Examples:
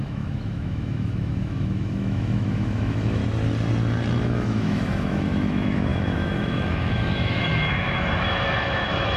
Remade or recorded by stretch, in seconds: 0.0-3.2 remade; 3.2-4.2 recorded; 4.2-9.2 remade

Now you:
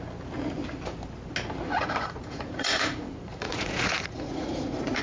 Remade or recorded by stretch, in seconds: 0.0-1.7 recorded; 1.7-5.0 remade

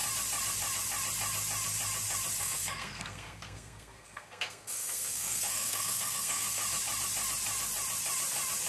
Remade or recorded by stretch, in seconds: 0.0-2.4 recorded; 2.4-6.6 remade; 6.6-8.7 recorded

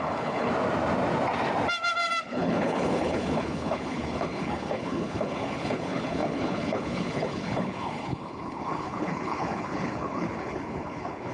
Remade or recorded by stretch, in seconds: 0.0-0.5 remade; 0.5-2.2 recorded; 2.2-11.3 remade

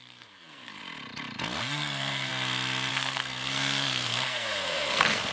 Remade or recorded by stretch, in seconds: 0.0-0.8 remade; 0.8-1.6 recorded; 1.6-2.3 remade; 2.3-2.9 recorded; 2.9-5.3 remade

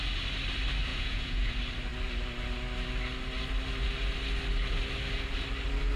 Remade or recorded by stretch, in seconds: 0.0-0.9 recorded; 0.9-1.5 remade; 1.5-6.0 recorded

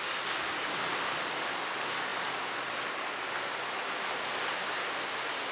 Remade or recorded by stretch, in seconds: 0.0-5.5 recorded